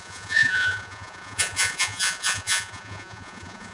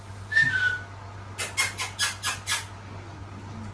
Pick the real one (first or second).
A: second